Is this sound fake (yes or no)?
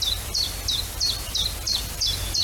yes